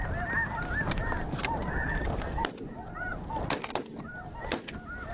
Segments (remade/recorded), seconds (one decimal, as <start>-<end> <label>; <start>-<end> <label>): 0.0-5.1 recorded